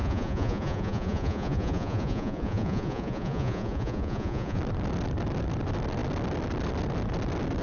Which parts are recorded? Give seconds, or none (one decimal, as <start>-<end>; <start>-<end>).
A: 4.6-7.6

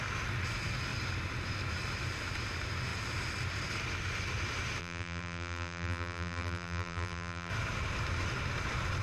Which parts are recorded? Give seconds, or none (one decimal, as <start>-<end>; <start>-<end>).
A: 0.0-4.8; 7.5-9.0

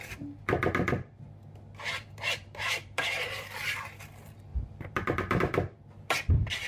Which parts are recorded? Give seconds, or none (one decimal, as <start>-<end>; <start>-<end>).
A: 0.0-2.0; 3.4-4.5; 5.4-6.7

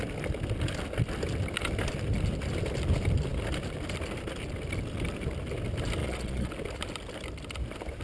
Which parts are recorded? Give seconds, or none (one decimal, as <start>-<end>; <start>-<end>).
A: 0.0-6.0; 6.5-8.0